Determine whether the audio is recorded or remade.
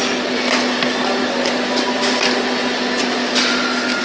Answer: recorded